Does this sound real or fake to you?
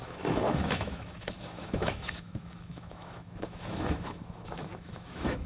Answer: fake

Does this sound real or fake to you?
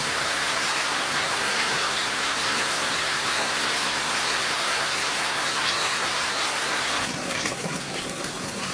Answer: fake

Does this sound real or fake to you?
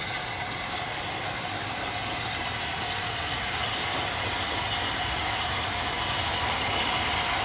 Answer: real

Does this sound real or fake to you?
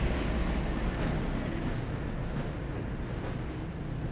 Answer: real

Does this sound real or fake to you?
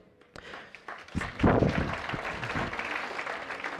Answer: real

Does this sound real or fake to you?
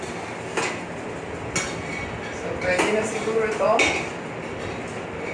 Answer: real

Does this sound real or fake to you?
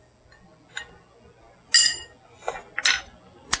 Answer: real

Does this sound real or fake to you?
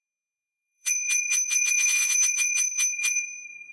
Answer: fake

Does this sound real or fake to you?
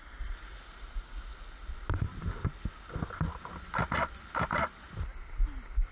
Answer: real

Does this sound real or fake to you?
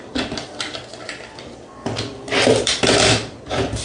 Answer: fake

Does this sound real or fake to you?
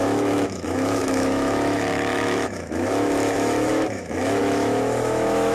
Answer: fake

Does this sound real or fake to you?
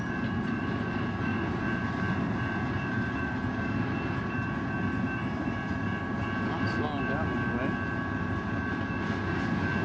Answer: real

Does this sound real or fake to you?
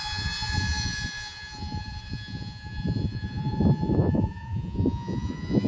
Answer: fake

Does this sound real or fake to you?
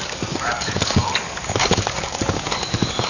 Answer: fake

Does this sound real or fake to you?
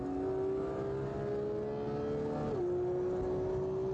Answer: real